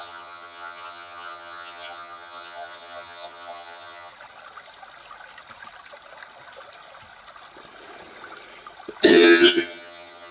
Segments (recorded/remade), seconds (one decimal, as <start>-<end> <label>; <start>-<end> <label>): 0.0-4.1 remade; 4.1-9.1 recorded; 9.1-10.3 remade